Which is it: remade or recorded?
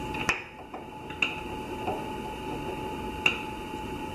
recorded